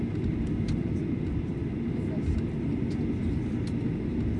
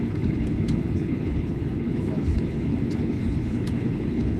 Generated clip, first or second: second